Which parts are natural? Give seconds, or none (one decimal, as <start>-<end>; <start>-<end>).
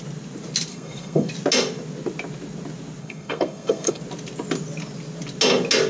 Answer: 0.0-0.7; 1.3-3.0; 4.0-5.9